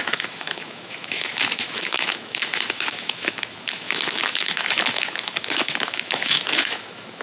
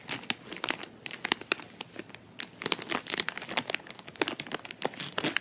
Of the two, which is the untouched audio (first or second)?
second